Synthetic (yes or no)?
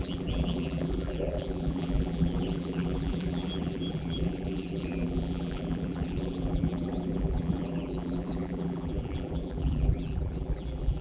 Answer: yes